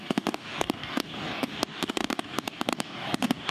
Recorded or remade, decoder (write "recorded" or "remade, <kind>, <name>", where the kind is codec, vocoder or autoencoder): remade, codec, DAC